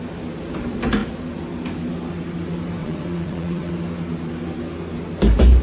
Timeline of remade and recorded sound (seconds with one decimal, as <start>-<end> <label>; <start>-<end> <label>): 0.0-2.8 recorded; 2.8-3.7 remade; 3.7-5.6 recorded